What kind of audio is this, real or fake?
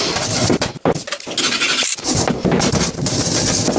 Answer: real